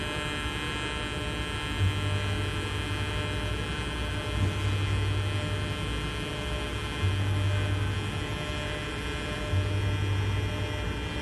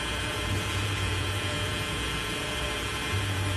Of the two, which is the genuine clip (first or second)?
first